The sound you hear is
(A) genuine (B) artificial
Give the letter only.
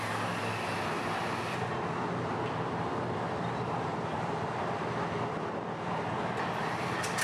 A